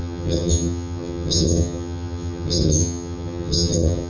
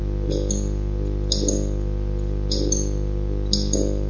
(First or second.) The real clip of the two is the second